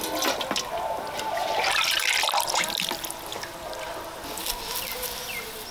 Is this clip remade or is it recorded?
recorded